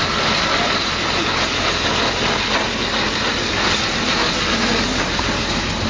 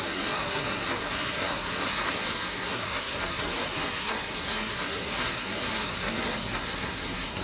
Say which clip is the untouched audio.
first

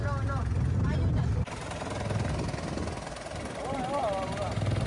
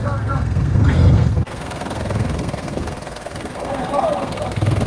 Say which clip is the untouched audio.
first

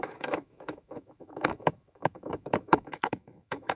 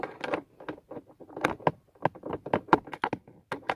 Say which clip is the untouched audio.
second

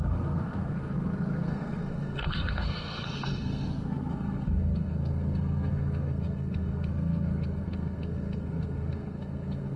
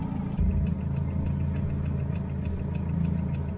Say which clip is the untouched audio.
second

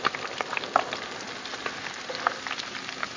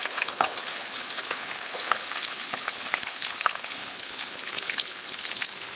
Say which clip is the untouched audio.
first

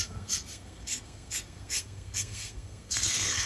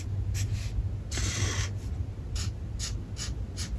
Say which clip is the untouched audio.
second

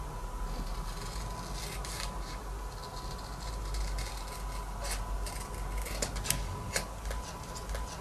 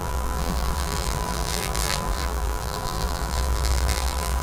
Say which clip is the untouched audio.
first